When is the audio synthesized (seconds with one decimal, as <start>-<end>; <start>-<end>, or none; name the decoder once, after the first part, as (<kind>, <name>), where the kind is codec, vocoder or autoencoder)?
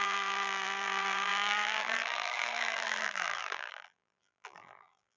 0.0-5.2 (vocoder, BigVGAN v2)